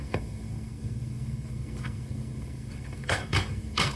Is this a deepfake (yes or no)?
yes